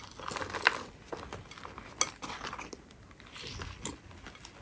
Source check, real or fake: real